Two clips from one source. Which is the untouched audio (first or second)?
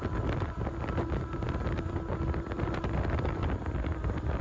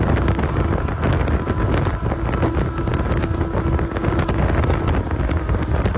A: second